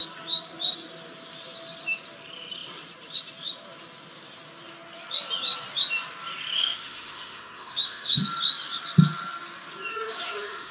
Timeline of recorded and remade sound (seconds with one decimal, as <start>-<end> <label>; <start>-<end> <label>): 0.0-6.6 recorded; 6.6-8.2 remade; 8.2-9.9 recorded; 9.9-10.7 remade